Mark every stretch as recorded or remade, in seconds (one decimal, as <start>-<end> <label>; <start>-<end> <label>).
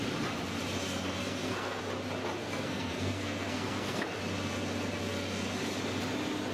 0.0-1.2 recorded; 1.2-1.8 remade; 1.8-2.4 recorded; 2.4-4.2 remade; 4.2-6.5 recorded